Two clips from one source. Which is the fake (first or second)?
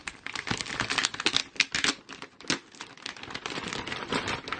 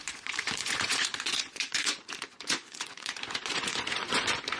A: second